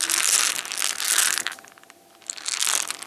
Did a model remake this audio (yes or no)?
no